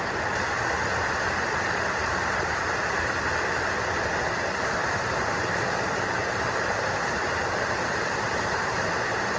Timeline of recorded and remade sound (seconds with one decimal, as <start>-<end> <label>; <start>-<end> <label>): 0.0-2.0 recorded; 2.0-2.6 remade; 2.6-4.8 recorded; 4.8-5.5 remade; 5.5-6.2 recorded; 6.2-9.4 remade